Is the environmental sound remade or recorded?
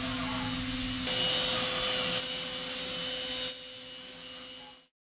recorded